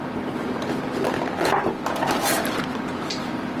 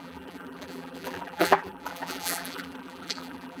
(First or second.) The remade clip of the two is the second